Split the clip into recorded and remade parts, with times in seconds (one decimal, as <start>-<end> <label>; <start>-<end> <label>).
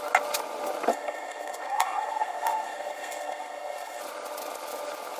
0.0-0.9 recorded; 0.9-4.0 remade; 4.0-5.2 recorded